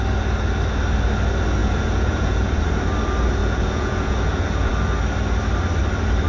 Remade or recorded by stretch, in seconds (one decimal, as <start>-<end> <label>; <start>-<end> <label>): 0.0-1.6 recorded; 1.6-2.6 remade; 2.6-3.4 recorded; 3.4-4.7 remade; 4.7-6.3 recorded